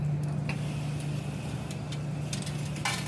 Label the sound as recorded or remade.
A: recorded